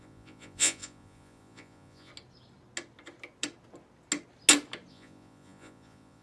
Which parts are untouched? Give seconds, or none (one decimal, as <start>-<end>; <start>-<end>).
2.1-4.9